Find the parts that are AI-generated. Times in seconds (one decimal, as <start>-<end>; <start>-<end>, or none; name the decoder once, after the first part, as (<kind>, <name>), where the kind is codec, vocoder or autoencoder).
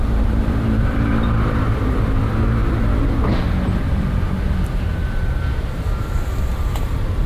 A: 0.0-7.3 (vocoder, BigVGAN v2)